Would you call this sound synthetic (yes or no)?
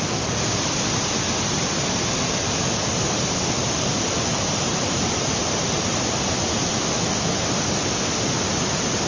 no